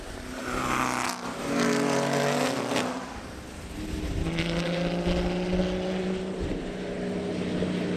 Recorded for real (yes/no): yes